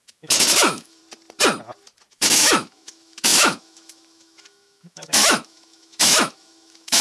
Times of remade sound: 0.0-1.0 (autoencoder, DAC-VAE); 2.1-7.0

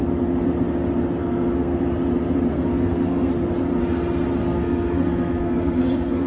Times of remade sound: 1.2-1.8 (codec, SNAC); 2.5-3.3; 4.4-6.3

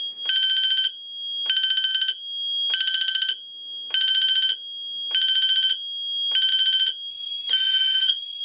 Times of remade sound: 7.1-8.4 (codec, SNAC)

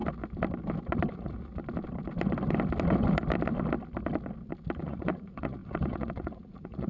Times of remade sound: 1.1-1.5 (vocoder, Vocos); 4.8-6.9

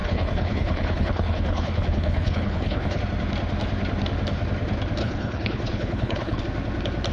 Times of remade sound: 0.0-3.0 (codec, HILCodec); 5.0-6.4

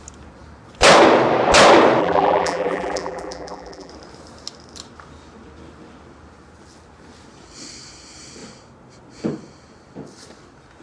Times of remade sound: 2.0-3.9 (vocoder, BigVGAN v2)

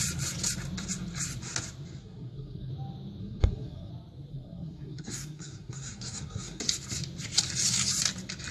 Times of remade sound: 2.0-2.7 (codec, SNAC); 3.2-3.9; 4.3-6.6